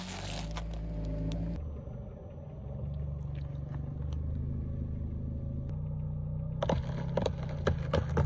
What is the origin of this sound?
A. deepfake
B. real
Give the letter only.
B